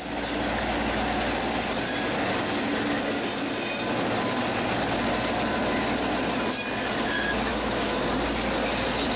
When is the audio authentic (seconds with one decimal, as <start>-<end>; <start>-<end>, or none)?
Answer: 0.0-7.5; 8.0-9.2